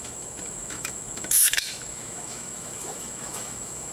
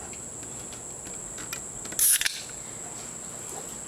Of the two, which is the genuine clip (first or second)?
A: second